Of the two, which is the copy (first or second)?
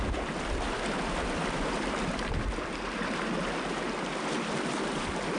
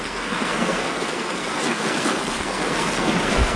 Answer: second